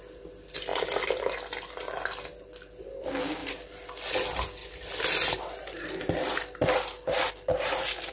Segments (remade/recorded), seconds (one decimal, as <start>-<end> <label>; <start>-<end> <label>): 0.0-3.4 recorded; 3.4-4.1 remade; 4.1-4.6 recorded; 4.6-7.3 remade; 7.3-8.1 recorded